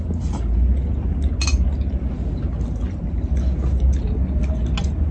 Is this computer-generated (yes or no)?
no